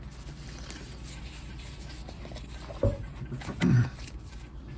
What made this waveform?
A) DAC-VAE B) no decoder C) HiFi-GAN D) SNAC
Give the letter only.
B